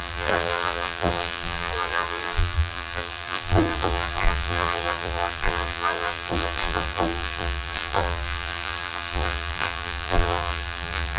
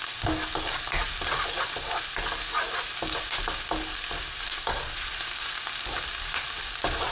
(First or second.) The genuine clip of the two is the second